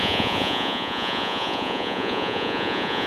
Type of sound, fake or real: fake